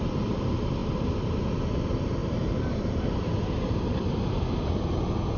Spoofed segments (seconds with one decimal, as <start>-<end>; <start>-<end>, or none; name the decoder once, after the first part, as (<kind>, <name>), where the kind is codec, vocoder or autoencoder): 2.2-4.6 (vocoder, BigVGAN v2)